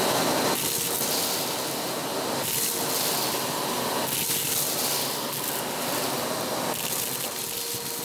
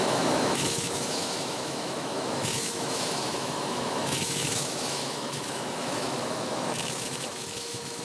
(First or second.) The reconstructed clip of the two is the second